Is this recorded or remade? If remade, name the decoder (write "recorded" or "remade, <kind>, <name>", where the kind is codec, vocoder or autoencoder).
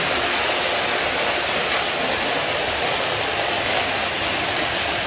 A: recorded